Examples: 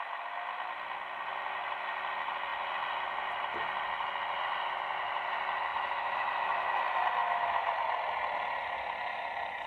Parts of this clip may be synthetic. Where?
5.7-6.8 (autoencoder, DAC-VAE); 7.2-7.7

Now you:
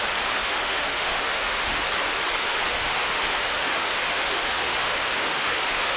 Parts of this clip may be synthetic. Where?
0.4-1.8 (autoencoder, DAC-VAE); 2.4-6.0

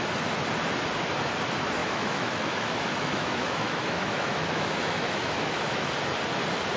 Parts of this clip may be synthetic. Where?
1.8-5.9 (autoencoder, DAC-VAE)

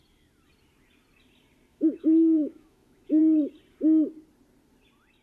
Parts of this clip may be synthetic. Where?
1.7-3.2 (autoencoder, DAC-VAE)

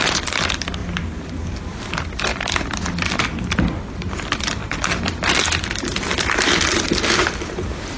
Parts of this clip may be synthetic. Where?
none

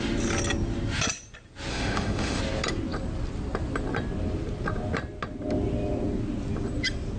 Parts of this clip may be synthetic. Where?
1.7-2.4 (autoencoder, DAC-VAE)